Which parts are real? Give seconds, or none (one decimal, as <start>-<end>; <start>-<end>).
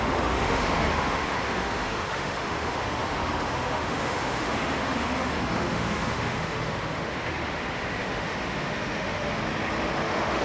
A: 9.4-10.0